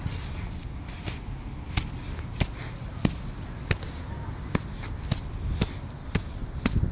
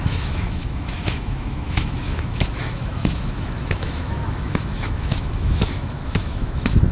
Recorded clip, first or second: first